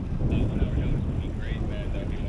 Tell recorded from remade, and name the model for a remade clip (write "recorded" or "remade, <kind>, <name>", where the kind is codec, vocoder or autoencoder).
recorded